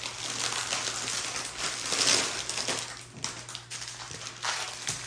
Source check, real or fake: real